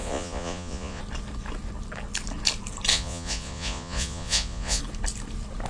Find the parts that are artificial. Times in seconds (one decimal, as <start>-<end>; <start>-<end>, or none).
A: 0.0-1.0; 2.9-4.8